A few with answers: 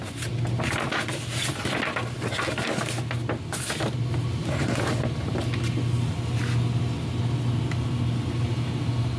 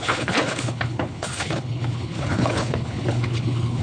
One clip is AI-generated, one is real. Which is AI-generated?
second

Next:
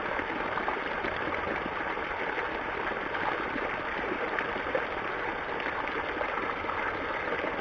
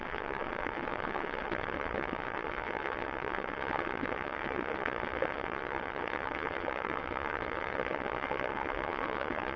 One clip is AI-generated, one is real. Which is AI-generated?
second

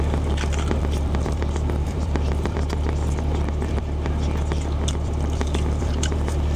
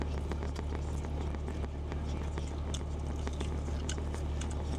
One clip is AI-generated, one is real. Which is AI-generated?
first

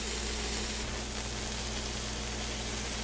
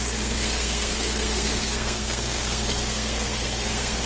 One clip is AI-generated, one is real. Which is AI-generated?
second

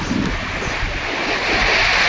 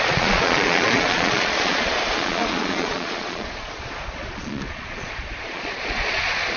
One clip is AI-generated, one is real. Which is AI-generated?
second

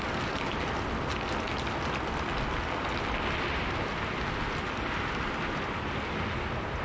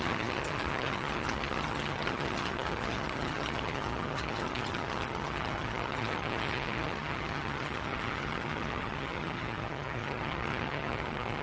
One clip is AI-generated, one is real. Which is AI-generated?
second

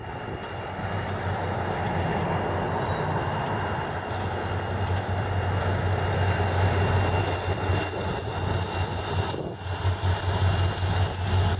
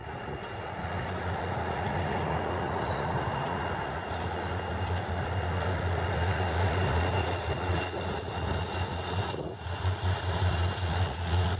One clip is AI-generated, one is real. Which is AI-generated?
second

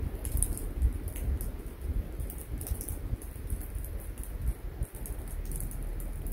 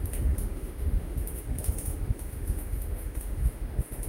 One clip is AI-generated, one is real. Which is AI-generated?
second